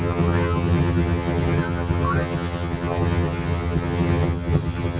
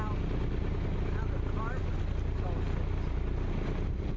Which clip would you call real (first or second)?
second